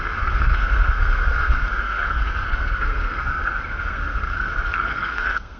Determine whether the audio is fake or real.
fake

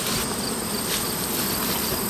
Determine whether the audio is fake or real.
real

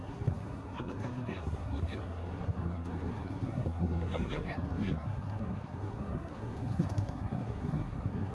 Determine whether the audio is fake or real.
fake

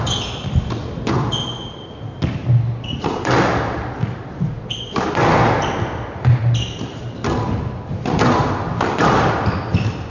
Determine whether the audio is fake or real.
real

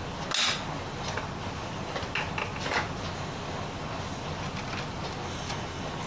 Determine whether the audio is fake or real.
real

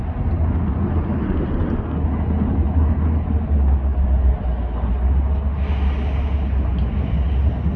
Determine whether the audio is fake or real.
real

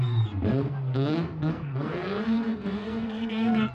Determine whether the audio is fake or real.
fake